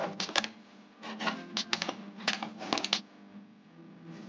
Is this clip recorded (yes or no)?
yes